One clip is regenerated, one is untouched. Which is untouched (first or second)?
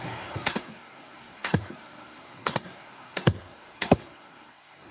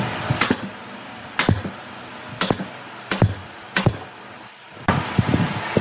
second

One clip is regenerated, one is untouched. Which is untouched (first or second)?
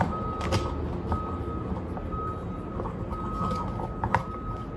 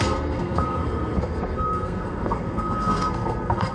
first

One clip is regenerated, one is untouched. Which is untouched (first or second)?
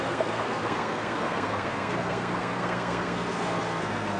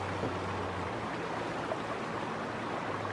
second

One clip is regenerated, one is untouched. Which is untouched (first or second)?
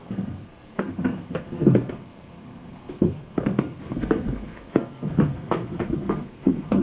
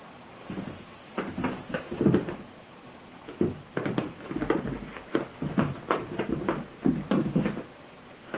second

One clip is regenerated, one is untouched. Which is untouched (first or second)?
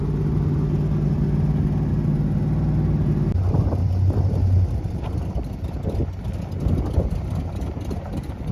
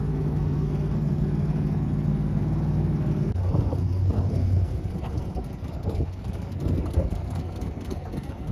first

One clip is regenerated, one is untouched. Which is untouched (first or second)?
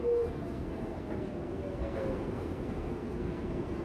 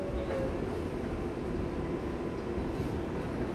second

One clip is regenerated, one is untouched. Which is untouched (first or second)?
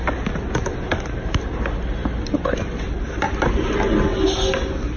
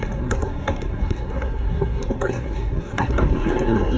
first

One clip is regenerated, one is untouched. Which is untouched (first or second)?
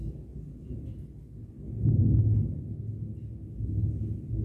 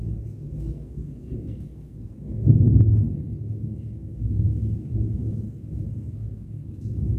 first